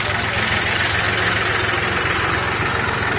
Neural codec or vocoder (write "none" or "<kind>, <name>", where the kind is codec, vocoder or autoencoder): none